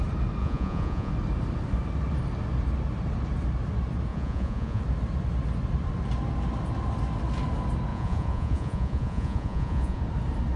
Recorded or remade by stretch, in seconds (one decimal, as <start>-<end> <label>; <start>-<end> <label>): 0.0-0.4 recorded; 0.4-1.1 remade; 1.1-4.1 recorded; 4.1-4.8 remade; 4.8-7.9 recorded; 7.9-10.0 remade; 10.0-10.6 recorded